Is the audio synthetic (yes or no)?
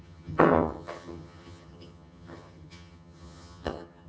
yes